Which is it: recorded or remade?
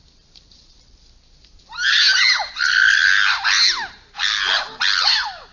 recorded